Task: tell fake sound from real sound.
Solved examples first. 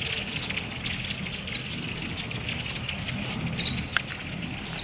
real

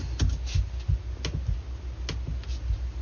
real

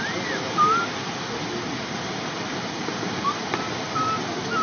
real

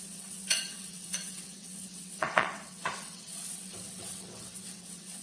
fake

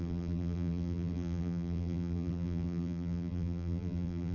fake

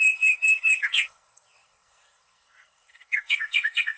fake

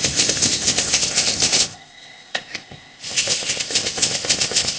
fake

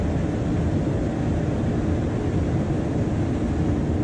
real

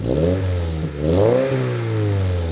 real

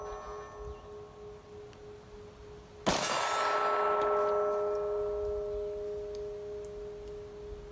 real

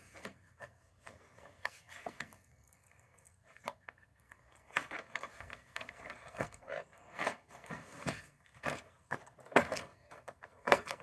fake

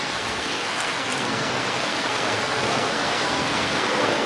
fake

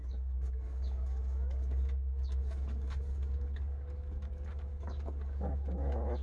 fake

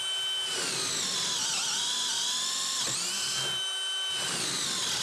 real